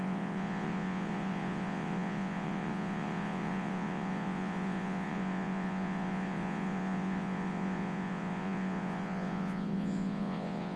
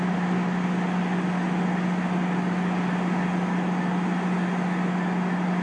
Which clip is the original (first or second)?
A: second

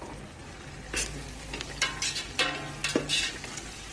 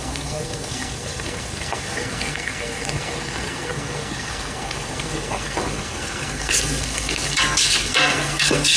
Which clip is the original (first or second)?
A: first